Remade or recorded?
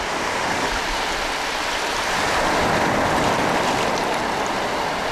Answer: recorded